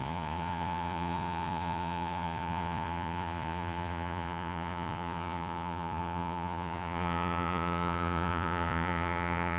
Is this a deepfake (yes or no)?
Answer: yes